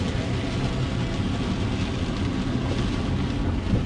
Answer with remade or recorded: recorded